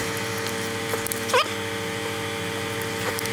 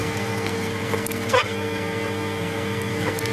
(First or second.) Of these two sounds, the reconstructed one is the second